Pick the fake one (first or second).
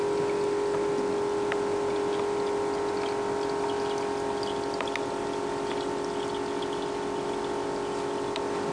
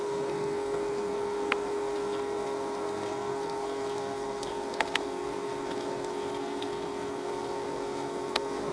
second